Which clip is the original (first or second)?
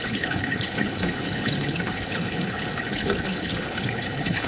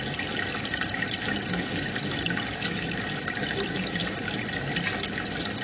second